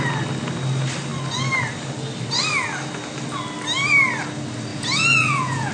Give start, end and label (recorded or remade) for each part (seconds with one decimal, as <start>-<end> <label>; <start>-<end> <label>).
0.0-4.7 recorded; 4.7-5.7 remade